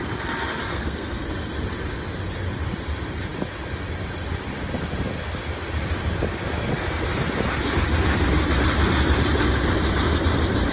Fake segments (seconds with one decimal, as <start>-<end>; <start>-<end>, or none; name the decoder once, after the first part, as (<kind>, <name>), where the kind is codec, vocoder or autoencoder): 0.7-1.3 (codec, SNAC)